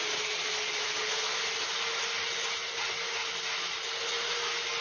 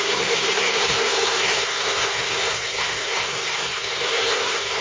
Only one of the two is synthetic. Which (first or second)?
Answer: second